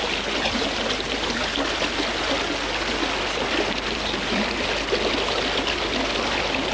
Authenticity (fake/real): real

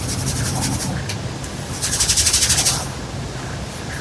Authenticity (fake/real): real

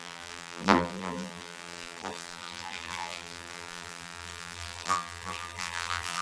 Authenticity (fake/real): fake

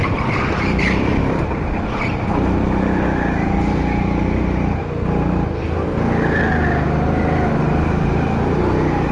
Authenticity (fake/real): real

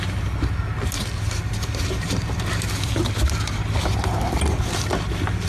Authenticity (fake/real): real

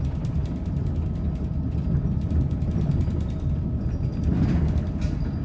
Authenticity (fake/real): real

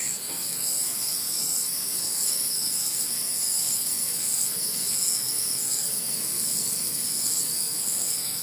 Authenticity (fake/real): fake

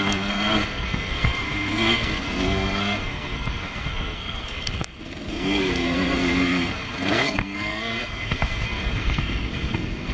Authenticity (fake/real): fake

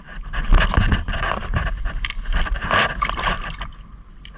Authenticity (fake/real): real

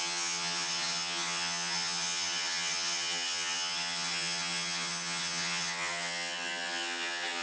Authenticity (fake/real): fake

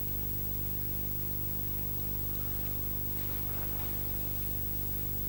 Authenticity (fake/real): real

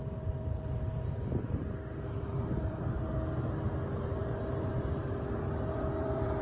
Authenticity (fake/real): fake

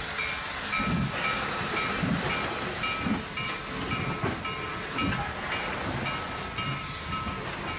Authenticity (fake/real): real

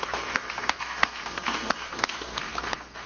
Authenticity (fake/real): fake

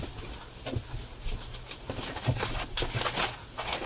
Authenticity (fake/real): real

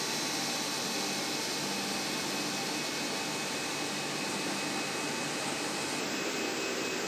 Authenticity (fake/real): real